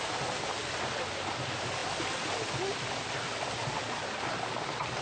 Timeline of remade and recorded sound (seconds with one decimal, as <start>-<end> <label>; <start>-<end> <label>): 0.0-5.0 recorded